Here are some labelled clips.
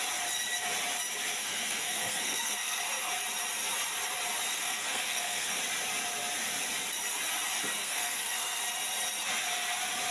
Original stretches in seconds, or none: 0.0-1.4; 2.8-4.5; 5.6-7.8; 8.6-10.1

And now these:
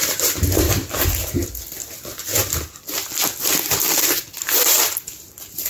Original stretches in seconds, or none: 1.4-4.8

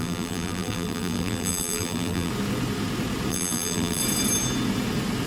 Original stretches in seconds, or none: 2.3-3.3; 4.0-5.3

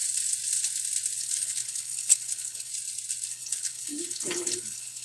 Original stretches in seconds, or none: 0.0-1.2; 2.7-3.3

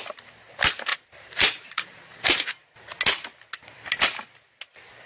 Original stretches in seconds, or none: 0.0-0.9; 2.5-5.1

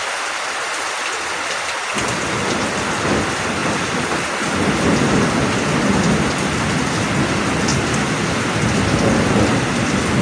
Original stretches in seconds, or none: 0.0-10.2

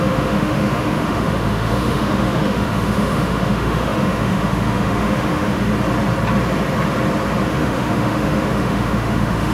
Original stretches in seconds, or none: 5.7-7.5

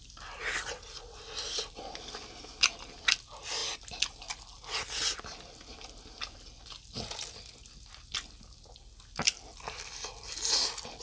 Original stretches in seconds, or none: 0.0-11.0